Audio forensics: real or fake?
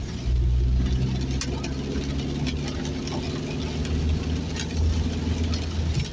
real